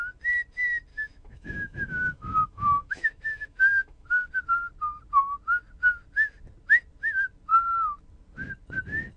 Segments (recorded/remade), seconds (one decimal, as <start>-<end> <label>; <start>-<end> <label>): 0.0-0.9 recorded; 0.9-4.3 remade; 4.3-9.2 recorded